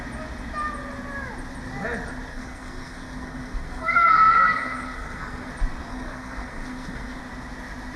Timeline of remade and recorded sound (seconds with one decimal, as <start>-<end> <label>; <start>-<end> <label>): 0.0-2.3 recorded; 2.3-5.5 remade; 5.5-5.9 recorded; 5.9-7.2 remade; 7.2-8.0 recorded